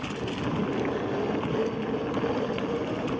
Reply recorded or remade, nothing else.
recorded